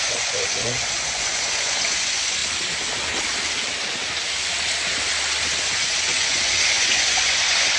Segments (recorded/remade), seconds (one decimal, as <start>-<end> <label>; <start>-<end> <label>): 0.0-2.4 remade; 2.4-5.6 recorded; 5.6-7.8 remade